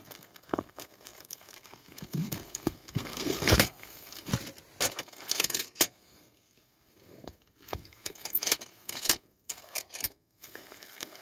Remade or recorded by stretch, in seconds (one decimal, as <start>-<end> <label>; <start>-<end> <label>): 0.0-4.3 remade; 4.3-4.9 recorded; 4.9-11.2 remade